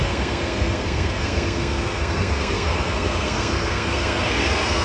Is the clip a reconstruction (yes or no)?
yes